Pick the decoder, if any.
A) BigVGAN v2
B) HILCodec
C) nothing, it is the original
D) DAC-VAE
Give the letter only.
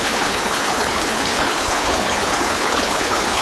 B